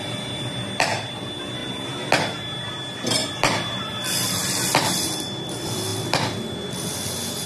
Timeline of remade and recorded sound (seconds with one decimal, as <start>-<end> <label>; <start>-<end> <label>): 0.0-1.6 remade; 1.6-2.7 recorded; 2.7-7.5 remade

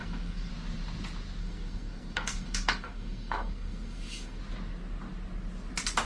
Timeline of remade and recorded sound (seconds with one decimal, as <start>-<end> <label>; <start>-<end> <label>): 0.0-0.5 remade; 0.5-1.4 recorded; 1.4-4.4 remade; 4.4-6.1 recorded

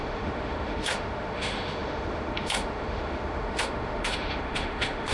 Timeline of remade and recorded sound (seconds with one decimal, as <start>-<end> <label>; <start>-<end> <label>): 0.0-5.1 remade